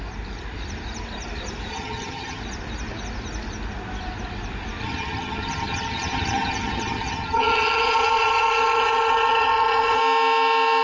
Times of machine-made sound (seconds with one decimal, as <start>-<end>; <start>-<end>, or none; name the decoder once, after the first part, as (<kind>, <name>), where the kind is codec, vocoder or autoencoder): 1.7-2.4 (vocoder, HiFi-GAN); 4.8-10.0